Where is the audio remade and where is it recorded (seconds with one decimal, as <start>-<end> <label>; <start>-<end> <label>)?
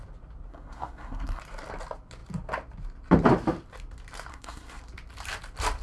0.0-0.5 recorded; 0.5-1.4 remade; 1.4-4.3 recorded; 4.3-4.8 remade; 4.8-5.8 recorded